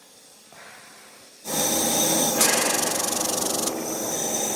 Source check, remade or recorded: recorded